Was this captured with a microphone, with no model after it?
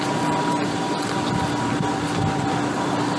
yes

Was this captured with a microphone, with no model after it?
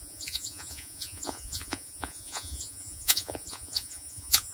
no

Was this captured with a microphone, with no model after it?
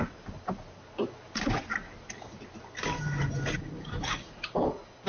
yes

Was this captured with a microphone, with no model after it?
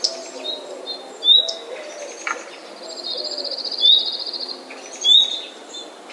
yes